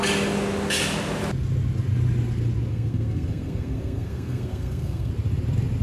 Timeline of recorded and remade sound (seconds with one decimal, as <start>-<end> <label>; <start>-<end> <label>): 0.0-2.7 recorded; 2.7-5.1 remade; 5.1-5.8 recorded